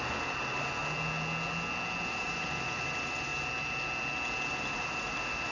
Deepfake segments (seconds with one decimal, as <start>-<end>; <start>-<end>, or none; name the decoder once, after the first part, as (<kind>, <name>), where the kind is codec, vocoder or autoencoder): 0.0-0.8 (vocoder, BigVGAN v2); 2.1-3.3; 4.5-5.5